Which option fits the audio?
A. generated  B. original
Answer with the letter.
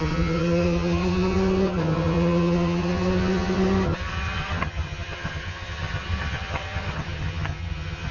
A